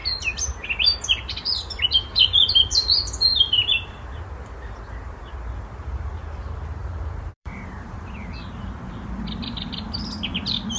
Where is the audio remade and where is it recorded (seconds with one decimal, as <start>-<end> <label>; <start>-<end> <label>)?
0.0-3.3 recorded; 3.3-4.0 remade; 4.0-6.8 recorded; 6.8-8.3 remade; 8.3-10.8 recorded